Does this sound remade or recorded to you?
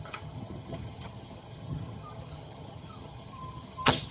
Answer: remade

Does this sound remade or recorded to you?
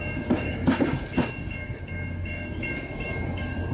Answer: remade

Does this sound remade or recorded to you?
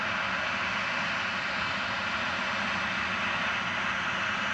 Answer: recorded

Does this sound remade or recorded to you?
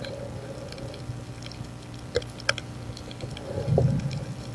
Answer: recorded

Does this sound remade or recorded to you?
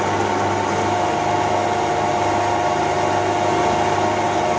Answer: recorded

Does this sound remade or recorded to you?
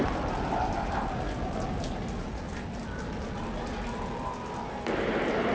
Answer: recorded